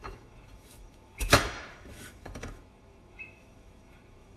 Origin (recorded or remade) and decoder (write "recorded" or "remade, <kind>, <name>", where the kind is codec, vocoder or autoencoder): remade, autoencoder, DAC-VAE